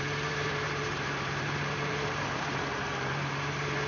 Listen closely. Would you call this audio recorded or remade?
remade